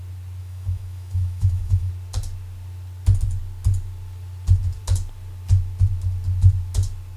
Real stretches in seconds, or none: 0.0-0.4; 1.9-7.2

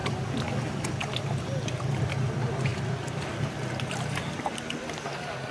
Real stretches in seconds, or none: 0.0-5.5

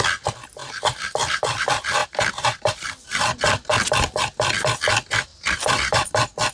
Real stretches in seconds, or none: 0.0-2.0; 2.7-3.1; 3.7-5.3; 6.1-6.5

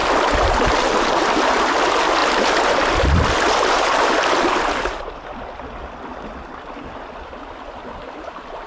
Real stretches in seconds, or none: 0.0-8.7

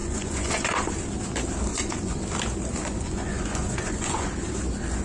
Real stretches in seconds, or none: 0.9-1.7; 2.2-2.8; 4.3-5.0

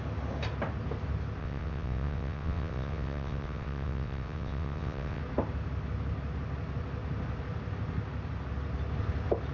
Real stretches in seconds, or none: 0.0-1.4; 5.2-9.5

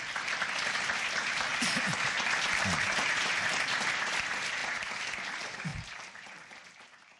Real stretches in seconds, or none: 0.0-7.2

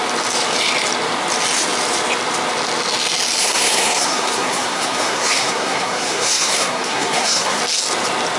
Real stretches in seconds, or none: 0.0-3.4; 7.6-8.4